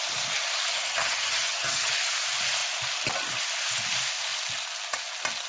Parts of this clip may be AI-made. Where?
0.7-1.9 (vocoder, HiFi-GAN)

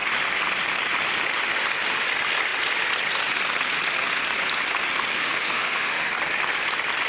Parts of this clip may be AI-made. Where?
5.2-6.1 (autoencoder, DAC-VAE)

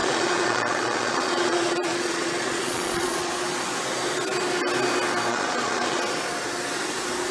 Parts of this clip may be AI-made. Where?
0.0-3.3 (vocoder, Vocos); 5.3-6.0

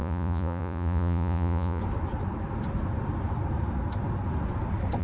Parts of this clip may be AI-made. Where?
0.0-1.8 (vocoder, Vocos)

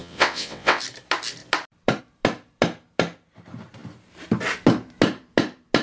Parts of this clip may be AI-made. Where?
0.0-0.8 (vocoder, WaveNeXt)

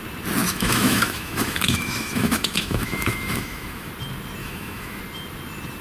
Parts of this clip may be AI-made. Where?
0.4-3.9 (autoencoder, DAC-VAE); 4.4-5.0